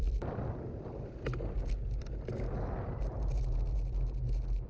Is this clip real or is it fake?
real